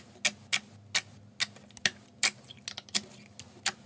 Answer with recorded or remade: recorded